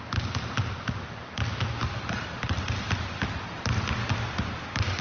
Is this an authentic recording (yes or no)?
yes